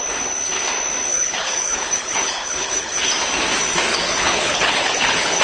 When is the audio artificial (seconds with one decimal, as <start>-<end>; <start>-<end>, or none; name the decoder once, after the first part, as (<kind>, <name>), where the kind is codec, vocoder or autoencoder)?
1.1-3.1 (codec, HILCodec); 3.9-5.4